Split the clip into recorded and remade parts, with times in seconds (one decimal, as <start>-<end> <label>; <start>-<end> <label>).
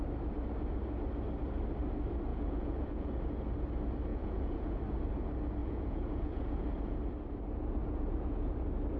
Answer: 0.0-2.3 recorded; 2.3-3.2 remade; 3.2-4.1 recorded; 4.1-4.8 remade; 4.8-5.6 recorded; 5.6-7.0 remade; 7.0-7.8 recorded; 7.8-8.5 remade; 8.5-9.0 recorded